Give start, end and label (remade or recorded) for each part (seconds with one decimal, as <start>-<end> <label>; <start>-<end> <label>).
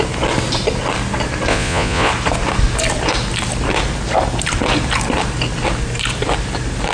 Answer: 0.0-1.5 recorded; 1.5-2.1 remade; 2.1-6.9 recorded